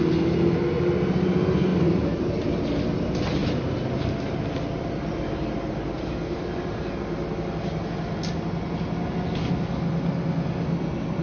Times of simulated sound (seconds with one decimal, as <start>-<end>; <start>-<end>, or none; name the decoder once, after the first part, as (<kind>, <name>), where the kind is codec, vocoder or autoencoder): 1.7-2.4 (vocoder, BigVGAN v2); 3.4-6.9